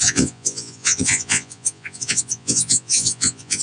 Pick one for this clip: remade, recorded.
remade